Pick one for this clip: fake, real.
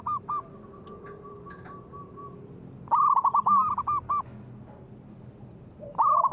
real